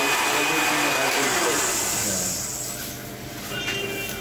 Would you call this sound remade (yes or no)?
no